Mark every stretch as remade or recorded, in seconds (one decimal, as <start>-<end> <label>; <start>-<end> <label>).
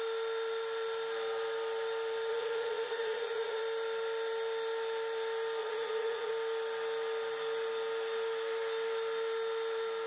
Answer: 0.0-2.3 recorded; 2.3-3.6 remade; 3.6-5.6 recorded; 5.6-6.3 remade; 6.3-10.1 recorded